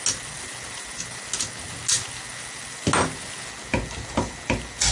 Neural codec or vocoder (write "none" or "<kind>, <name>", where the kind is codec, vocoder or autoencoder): none